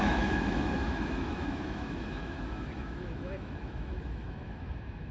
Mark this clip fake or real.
fake